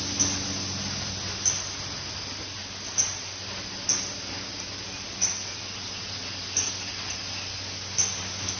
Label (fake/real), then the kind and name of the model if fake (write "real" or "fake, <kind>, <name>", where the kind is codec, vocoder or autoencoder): real